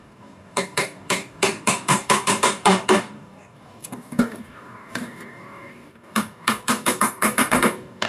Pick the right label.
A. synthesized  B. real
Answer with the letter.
A